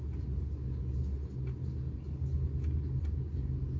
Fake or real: real